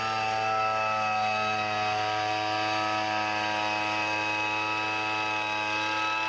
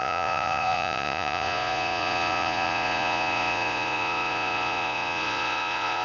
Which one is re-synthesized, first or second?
second